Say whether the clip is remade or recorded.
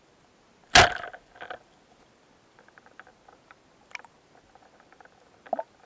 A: recorded